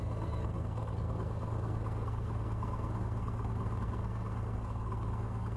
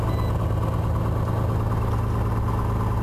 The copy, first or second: first